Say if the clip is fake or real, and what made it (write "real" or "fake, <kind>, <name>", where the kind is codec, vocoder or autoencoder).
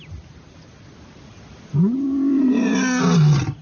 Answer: real